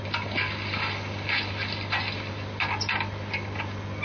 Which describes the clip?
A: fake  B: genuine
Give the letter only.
B